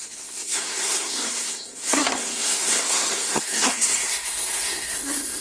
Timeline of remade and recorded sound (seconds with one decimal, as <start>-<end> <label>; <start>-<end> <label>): 0.0-5.4 remade